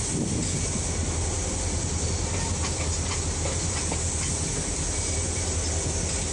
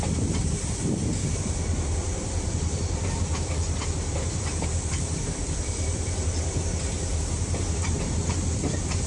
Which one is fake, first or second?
second